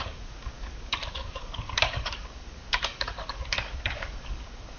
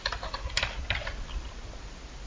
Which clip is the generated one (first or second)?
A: first